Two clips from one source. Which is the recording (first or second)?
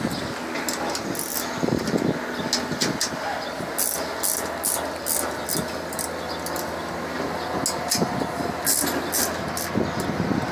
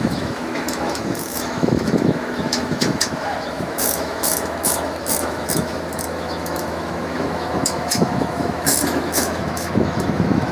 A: first